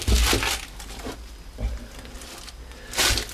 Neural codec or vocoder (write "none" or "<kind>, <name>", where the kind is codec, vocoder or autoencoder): none